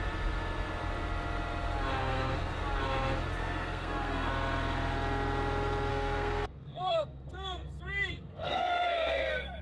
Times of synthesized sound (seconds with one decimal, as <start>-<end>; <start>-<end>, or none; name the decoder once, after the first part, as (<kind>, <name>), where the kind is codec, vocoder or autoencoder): 2.0-2.6 (codec, SNAC); 3.4-4.3; 5.9-9.6